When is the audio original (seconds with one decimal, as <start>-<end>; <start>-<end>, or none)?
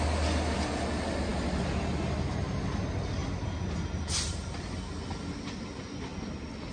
0.0-6.7